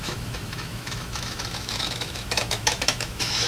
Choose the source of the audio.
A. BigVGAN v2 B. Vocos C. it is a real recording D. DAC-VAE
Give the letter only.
D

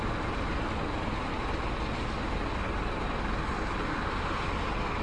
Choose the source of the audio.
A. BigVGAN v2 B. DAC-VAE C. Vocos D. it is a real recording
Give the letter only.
D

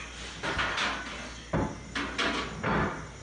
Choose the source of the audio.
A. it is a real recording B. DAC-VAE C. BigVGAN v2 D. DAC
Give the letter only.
A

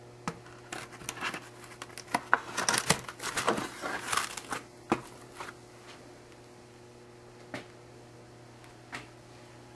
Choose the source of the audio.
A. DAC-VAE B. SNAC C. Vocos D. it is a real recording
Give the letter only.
D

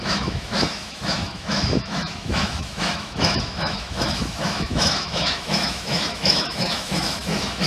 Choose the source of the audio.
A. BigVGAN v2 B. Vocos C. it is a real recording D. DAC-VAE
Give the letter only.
D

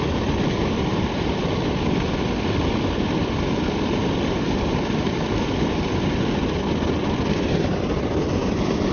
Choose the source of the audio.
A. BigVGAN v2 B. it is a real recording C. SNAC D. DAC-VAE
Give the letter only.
B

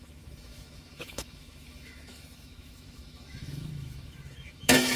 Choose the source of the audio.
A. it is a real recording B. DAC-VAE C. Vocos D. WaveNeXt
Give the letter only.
B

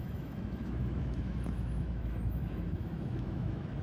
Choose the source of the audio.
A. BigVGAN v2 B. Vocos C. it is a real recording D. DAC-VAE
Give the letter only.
D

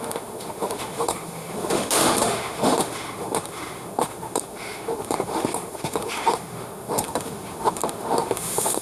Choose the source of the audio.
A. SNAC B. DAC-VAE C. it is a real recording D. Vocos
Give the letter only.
B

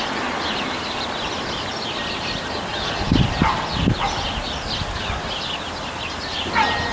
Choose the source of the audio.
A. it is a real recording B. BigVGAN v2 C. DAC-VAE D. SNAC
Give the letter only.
A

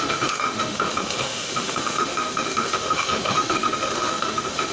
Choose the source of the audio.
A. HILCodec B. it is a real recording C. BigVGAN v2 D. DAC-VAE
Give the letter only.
D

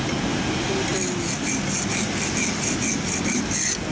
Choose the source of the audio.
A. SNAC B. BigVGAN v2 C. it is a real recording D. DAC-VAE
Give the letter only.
C